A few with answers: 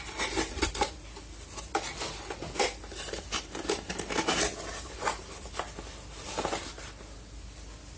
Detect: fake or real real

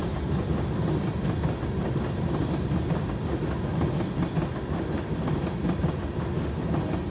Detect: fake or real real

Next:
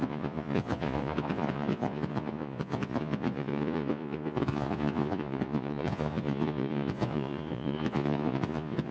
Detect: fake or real fake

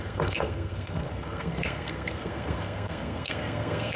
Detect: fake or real fake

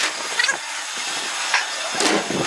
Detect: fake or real real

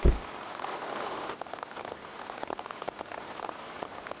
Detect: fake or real real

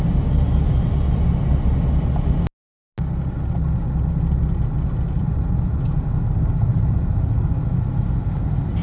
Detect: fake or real real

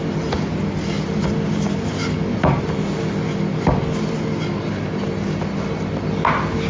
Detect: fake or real real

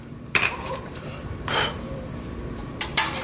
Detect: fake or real fake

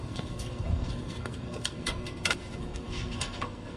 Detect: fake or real fake